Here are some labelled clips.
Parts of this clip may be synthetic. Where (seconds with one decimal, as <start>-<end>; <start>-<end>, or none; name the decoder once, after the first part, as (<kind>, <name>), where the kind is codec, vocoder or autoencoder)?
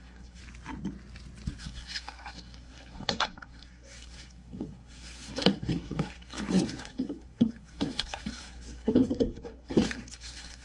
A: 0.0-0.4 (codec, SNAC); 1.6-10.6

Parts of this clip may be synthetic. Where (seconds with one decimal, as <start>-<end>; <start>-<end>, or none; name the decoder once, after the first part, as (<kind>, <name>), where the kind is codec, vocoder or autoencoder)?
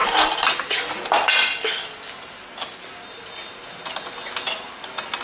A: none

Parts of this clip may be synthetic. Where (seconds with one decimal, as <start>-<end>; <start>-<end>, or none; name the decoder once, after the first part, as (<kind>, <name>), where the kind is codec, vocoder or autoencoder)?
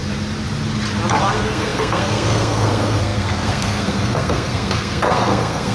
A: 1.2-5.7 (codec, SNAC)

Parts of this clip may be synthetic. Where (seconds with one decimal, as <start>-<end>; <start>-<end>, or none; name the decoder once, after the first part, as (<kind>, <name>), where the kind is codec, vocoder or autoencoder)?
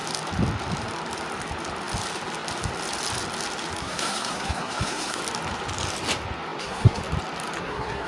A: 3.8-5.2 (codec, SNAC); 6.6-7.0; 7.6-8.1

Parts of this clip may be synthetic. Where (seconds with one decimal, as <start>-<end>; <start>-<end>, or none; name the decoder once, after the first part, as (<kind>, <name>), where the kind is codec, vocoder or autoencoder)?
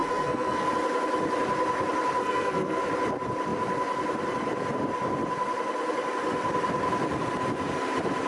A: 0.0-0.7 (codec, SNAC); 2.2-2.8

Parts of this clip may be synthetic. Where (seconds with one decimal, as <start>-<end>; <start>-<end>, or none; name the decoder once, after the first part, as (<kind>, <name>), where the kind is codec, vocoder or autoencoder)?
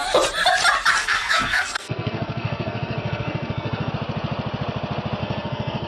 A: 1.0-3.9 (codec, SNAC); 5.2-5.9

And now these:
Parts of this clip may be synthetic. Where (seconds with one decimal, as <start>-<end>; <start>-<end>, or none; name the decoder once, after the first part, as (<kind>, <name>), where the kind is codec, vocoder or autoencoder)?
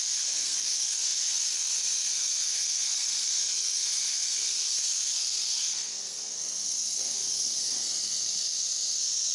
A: 0.0-9.3 (codec, SNAC)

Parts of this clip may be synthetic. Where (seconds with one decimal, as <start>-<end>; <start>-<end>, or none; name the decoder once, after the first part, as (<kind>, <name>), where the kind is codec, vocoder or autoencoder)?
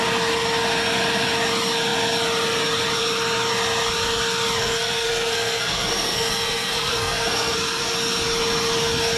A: 4.6-7.8 (codec, SNAC)